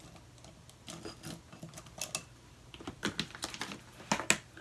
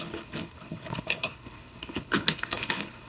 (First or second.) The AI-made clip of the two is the second